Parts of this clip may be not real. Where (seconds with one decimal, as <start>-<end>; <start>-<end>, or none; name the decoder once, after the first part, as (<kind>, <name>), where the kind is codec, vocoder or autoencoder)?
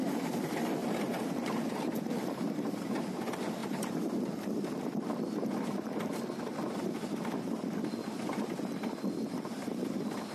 0.8-1.9 (vocoder, BigVGAN v2); 3.6-4.1; 8.0-8.6